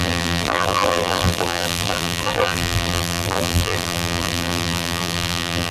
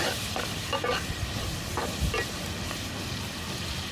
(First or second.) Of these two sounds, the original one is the second